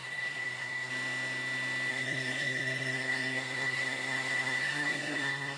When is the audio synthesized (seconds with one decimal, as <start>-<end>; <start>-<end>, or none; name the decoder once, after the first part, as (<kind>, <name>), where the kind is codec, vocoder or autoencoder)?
0.0-0.9 (codec, SNAC); 1.9-5.6